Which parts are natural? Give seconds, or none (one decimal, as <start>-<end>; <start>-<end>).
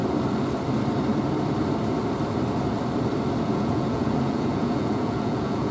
0.0-3.4